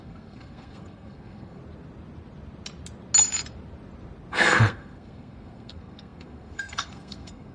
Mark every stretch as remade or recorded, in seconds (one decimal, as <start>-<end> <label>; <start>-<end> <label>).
0.0-1.6 remade; 1.6-4.3 recorded; 4.3-7.5 remade